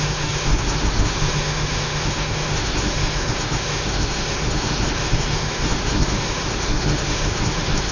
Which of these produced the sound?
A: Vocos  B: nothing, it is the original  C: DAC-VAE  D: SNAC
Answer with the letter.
C